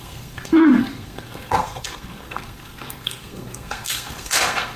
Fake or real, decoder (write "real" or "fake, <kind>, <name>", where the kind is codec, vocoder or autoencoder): fake, codec, SNAC